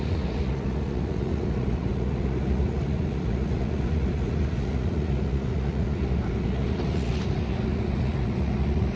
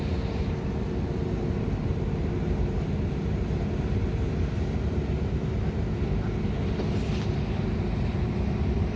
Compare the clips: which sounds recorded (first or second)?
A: second